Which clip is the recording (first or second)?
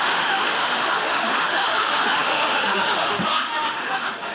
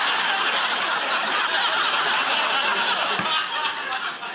second